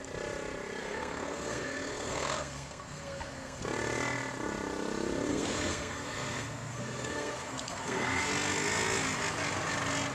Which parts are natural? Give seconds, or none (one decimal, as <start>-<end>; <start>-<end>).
0.0-0.8; 3.6-5.3; 8.3-10.1